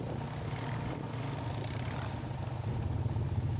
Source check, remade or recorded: recorded